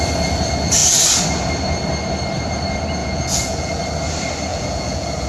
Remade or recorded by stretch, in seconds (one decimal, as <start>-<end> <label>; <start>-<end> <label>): 0.0-3.0 recorded; 3.0-3.8 remade; 3.8-4.5 recorded; 4.5-5.3 remade